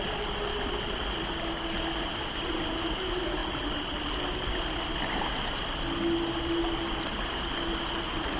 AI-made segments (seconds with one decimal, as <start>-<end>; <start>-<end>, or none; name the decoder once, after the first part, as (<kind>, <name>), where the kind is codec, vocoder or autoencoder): none